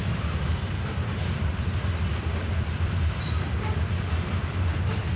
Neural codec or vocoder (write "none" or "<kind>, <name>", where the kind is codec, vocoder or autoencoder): vocoder, BigVGAN v2